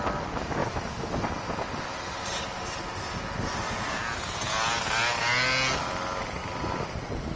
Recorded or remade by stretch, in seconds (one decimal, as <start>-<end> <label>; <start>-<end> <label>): 0.0-7.4 recorded